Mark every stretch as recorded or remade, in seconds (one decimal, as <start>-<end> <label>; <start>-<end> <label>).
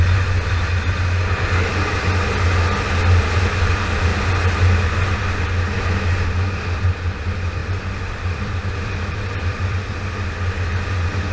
0.0-7.6 recorded; 7.6-10.0 remade; 10.0-11.3 recorded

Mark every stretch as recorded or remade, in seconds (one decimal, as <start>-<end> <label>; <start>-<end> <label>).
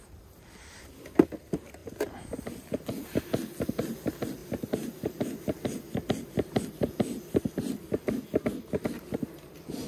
0.0-4.4 recorded; 4.4-6.9 remade; 6.9-9.9 recorded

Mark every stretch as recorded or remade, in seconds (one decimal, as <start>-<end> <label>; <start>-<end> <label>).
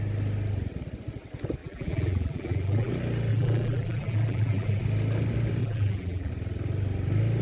0.0-1.6 recorded; 1.6-2.9 remade; 2.9-3.3 recorded; 3.3-4.8 remade; 4.8-5.6 recorded; 5.6-6.3 remade; 6.3-7.4 recorded